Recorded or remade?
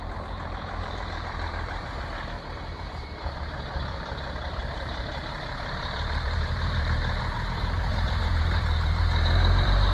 remade